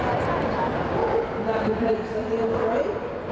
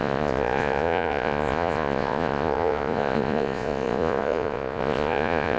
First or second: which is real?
first